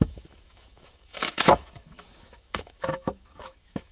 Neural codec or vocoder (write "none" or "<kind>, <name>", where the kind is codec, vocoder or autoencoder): autoencoder, DAC-VAE